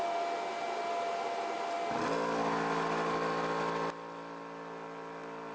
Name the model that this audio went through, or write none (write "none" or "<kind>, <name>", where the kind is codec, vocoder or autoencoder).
none